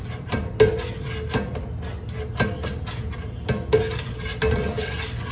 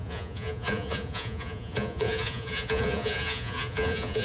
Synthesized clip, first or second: second